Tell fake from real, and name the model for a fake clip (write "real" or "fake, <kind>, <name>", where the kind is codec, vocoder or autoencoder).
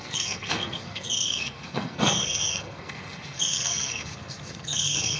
fake, codec, SNAC